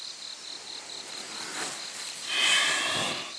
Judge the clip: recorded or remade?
recorded